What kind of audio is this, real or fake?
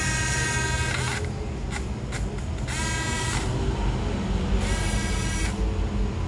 real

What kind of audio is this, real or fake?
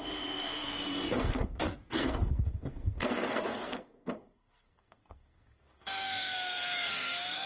fake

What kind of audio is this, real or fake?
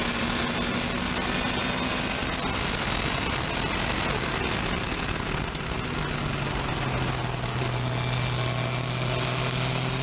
real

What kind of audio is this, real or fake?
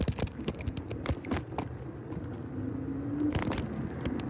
real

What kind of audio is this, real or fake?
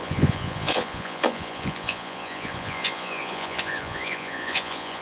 fake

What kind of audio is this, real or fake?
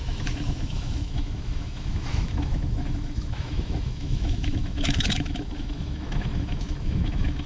fake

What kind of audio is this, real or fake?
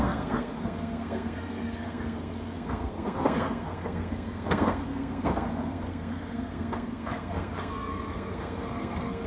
fake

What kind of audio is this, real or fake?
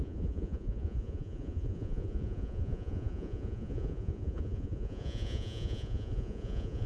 fake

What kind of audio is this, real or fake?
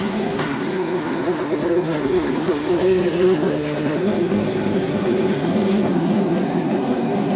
fake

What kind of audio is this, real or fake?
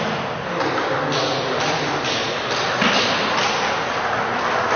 real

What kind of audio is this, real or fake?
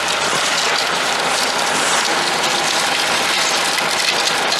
real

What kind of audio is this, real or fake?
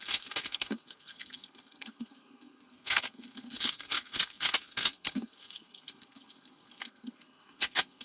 fake